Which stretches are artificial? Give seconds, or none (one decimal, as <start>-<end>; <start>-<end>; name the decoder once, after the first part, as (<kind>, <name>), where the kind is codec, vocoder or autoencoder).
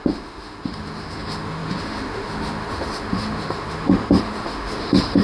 0.0-5.2 (autoencoder, DAC-VAE)